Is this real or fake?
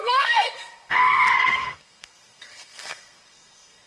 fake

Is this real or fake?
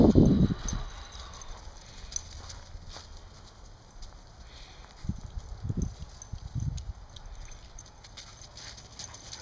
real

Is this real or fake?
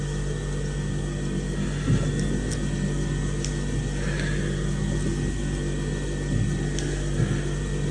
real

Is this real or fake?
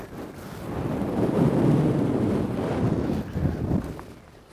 real